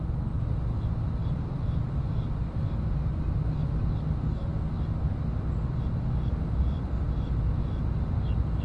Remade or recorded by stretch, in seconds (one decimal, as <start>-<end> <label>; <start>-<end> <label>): 0.0-1.2 recorded; 1.2-1.8 remade; 1.8-8.6 recorded